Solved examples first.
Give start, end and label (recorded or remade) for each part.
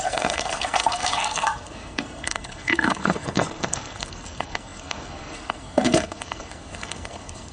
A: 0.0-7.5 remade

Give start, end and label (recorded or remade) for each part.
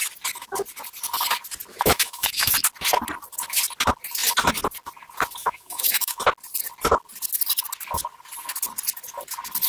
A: 0.0-1.7 recorded; 1.7-2.5 remade; 2.5-5.4 recorded; 5.4-6.2 remade; 6.2-9.7 recorded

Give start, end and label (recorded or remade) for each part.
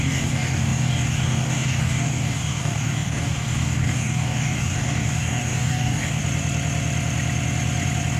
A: 0.0-6.2 remade; 6.2-8.2 recorded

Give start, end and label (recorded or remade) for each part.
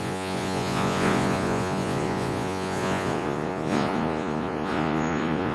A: 0.0-5.5 remade